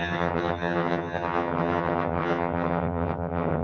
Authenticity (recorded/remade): remade